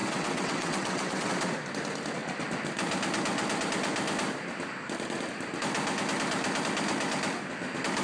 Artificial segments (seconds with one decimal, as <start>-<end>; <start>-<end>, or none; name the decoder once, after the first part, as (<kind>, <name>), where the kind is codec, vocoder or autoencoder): 0.0-1.3 (vocoder, WaveNeXt)